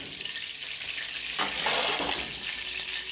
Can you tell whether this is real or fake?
real